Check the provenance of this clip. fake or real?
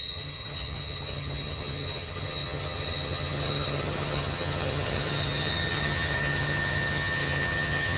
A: fake